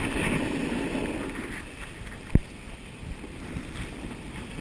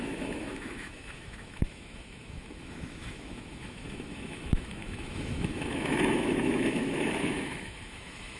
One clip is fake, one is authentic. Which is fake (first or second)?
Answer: second